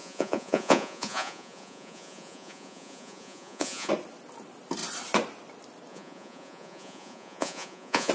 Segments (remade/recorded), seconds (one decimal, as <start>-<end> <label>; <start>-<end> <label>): 0.0-3.9 remade; 3.9-5.9 recorded; 5.9-8.1 remade